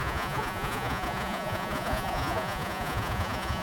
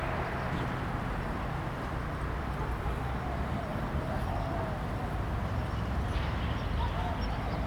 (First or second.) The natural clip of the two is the second